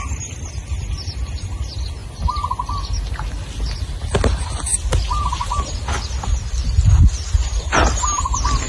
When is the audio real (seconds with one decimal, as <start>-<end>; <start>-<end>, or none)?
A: 0.0-8.7